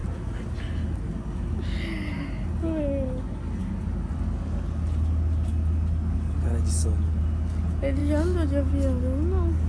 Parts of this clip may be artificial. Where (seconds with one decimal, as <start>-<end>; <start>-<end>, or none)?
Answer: none